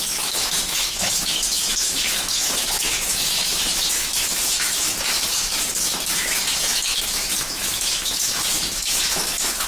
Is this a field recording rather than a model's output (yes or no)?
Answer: no